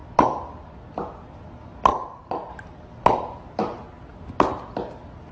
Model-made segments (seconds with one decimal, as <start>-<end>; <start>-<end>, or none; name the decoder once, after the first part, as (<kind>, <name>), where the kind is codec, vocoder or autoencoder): 1.9-2.5 (vocoder, Vocos)